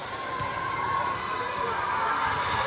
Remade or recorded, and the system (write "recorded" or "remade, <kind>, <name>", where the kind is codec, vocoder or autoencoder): recorded